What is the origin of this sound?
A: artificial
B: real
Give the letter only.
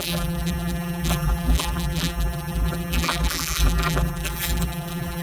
A